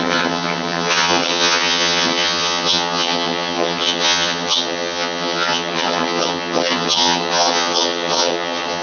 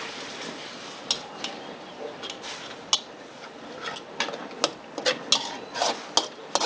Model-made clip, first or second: first